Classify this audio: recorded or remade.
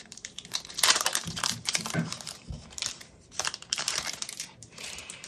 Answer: remade